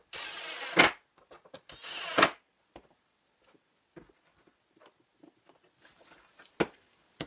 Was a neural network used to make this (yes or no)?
no